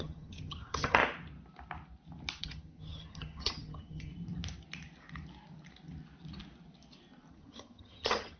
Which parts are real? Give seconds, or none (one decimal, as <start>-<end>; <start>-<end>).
1.0-2.4; 4.1-7.3